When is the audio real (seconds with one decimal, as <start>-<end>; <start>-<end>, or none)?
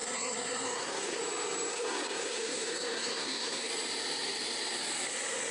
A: 1.2-1.7; 3.7-5.5